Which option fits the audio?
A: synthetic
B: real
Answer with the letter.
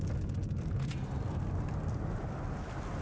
B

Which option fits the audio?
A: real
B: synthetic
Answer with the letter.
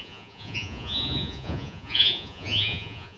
B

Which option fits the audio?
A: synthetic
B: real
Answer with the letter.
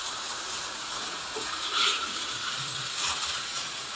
A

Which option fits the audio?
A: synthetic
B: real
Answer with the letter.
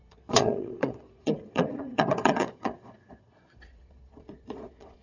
A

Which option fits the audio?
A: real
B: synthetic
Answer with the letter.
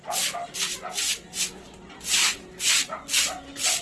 A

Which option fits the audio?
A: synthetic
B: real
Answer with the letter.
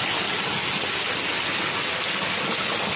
B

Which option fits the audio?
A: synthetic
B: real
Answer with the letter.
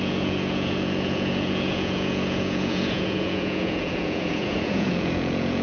A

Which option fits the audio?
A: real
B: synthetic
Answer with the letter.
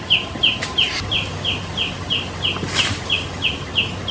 A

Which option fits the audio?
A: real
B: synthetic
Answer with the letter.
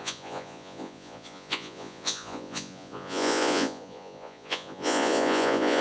B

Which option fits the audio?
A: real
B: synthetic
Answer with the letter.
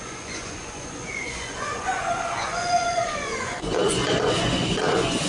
B